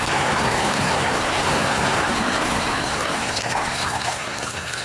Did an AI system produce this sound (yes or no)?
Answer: yes